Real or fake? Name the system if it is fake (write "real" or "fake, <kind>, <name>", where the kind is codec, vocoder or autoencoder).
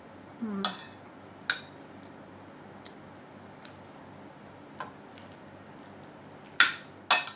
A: real